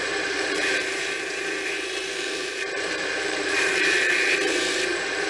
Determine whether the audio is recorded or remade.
remade